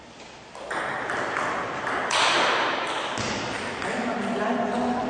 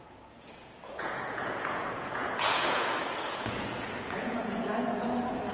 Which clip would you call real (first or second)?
first